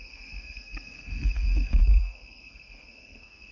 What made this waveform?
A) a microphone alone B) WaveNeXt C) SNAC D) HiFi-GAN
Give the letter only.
C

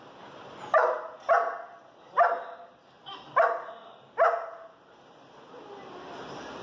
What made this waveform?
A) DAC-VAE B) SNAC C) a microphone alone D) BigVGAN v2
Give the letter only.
C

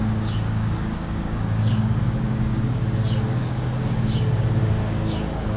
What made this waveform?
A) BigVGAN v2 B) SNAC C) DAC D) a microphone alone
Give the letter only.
C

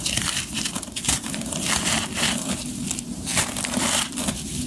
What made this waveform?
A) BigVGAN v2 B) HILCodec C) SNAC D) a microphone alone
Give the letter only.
A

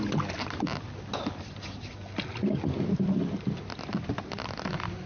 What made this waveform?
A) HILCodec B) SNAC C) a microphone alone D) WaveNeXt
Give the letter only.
C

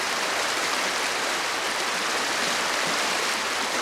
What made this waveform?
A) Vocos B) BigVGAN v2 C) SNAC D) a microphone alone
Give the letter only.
D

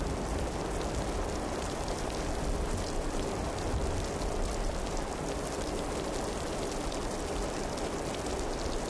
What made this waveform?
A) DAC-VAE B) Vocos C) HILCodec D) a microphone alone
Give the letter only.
D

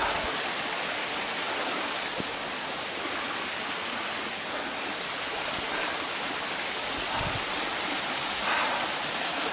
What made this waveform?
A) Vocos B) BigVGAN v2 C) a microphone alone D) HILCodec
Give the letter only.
C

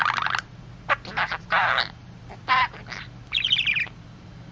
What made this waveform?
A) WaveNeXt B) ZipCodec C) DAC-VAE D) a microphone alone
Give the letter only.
D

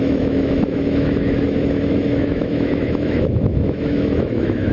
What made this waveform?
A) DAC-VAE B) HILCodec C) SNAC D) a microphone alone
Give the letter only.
A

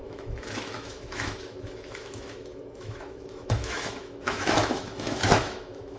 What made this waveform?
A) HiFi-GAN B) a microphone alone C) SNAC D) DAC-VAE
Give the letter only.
D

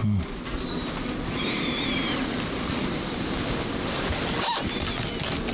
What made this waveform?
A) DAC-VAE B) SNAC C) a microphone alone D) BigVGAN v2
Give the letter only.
C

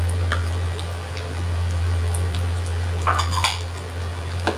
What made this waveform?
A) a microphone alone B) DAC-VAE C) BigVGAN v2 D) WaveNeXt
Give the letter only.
C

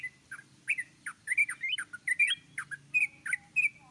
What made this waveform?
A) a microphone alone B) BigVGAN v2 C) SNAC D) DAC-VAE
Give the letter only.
A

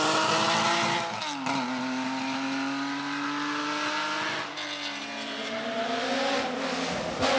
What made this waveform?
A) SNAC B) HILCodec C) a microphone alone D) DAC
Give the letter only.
C